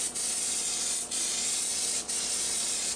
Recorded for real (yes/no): no